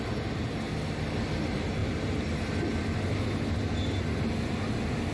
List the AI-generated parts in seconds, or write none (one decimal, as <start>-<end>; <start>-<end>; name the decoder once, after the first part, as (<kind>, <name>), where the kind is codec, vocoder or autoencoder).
none